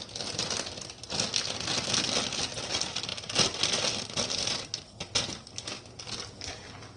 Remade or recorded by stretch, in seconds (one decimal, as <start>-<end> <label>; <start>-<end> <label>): 0.0-7.0 recorded